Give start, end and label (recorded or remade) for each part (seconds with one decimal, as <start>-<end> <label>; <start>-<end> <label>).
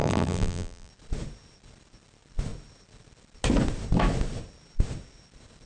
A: 0.0-0.9 remade; 0.9-5.7 recorded